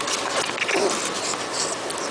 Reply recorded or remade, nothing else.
recorded